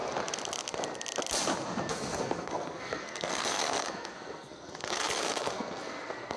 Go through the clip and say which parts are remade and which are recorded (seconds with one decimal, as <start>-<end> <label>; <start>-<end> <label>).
0.0-1.9 recorded; 1.9-6.4 remade